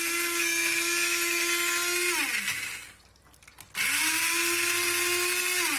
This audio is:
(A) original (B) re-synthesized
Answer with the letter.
A